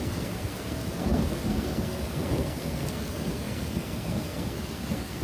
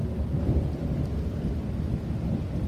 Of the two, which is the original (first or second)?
second